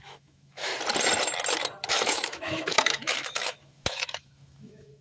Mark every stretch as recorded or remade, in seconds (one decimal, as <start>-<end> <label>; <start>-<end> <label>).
0.0-0.7 remade; 0.7-1.9 recorded; 1.9-5.0 remade